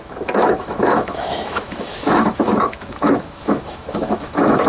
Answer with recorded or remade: remade